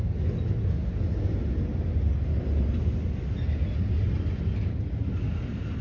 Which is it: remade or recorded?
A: recorded